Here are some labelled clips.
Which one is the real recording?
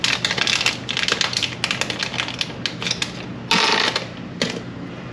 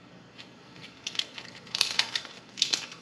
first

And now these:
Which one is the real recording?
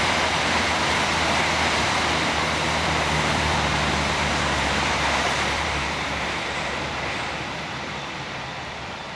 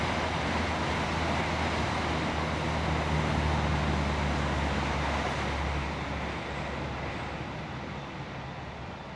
second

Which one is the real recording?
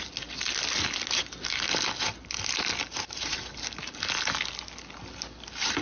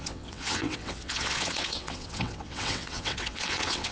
first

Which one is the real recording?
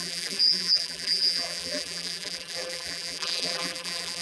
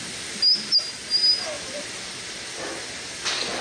second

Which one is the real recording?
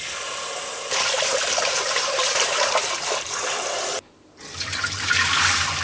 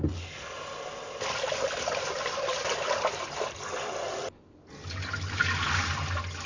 second